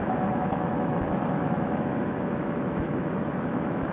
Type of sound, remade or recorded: remade